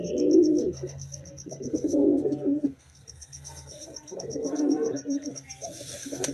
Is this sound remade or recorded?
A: remade